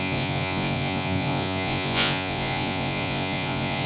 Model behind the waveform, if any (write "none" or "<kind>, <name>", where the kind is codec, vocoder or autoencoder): vocoder, Vocos